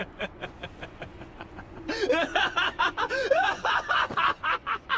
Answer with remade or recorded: remade